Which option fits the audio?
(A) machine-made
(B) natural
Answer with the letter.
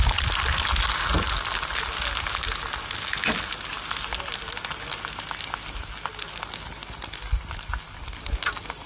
B